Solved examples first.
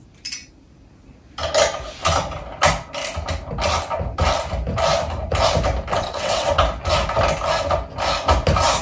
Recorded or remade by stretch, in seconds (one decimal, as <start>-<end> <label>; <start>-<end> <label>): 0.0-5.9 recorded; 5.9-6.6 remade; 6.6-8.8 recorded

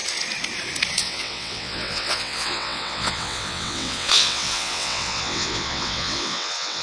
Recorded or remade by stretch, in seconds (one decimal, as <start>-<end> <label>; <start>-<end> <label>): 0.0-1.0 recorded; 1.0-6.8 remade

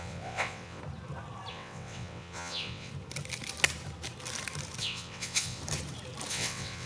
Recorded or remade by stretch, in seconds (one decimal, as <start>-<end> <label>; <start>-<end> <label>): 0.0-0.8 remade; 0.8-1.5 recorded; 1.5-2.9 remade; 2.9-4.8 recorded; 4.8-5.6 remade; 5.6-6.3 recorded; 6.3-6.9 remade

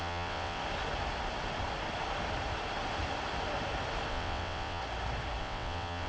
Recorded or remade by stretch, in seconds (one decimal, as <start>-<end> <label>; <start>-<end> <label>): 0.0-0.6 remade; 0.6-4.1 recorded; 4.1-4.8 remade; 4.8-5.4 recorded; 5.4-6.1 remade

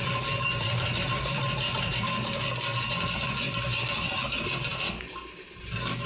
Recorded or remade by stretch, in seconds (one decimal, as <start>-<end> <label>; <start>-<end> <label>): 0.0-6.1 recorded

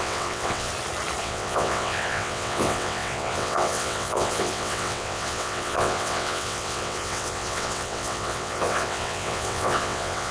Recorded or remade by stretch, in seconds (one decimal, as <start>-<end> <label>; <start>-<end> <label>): 0.0-0.7 remade; 0.7-1.2 recorded; 1.2-10.3 remade

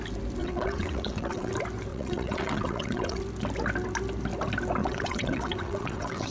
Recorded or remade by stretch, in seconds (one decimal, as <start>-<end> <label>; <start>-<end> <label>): 0.0-0.4 recorded; 0.4-1.5 remade; 1.5-1.9 recorded; 1.9-3.2 remade; 3.2-4.8 recorded; 4.8-6.3 remade